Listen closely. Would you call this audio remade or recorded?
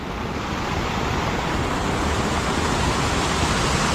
recorded